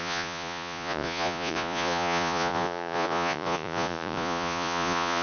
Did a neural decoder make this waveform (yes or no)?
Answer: yes